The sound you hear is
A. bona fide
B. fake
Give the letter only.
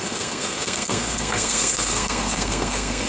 B